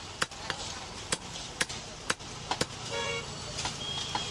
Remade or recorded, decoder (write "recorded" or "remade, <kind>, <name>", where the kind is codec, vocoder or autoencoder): remade, vocoder, BigVGAN v2